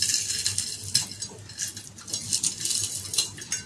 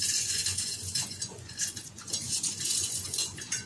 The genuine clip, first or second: first